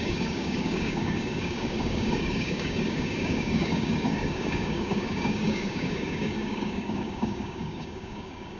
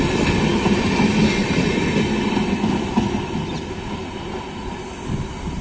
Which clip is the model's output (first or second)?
first